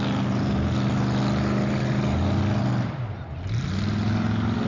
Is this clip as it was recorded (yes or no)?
yes